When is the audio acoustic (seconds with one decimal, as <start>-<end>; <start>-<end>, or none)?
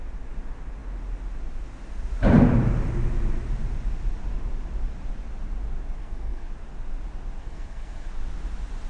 0.0-6.0; 6.5-7.4; 8.1-8.9